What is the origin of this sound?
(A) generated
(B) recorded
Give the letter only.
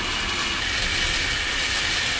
B